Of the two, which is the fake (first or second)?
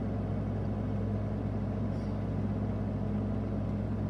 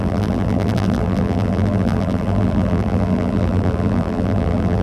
second